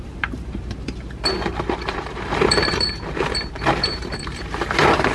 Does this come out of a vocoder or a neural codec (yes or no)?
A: yes